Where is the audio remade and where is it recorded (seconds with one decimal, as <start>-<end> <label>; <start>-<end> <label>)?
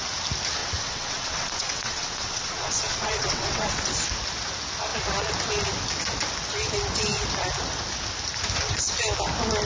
0.0-0.6 recorded; 0.6-3.9 remade; 3.9-9.6 recorded